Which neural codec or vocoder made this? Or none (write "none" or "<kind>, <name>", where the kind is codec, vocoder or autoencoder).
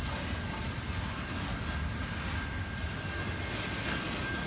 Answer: none